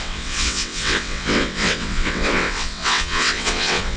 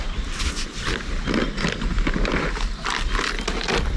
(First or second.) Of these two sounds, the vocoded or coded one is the first